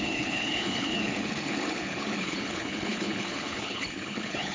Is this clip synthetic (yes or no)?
yes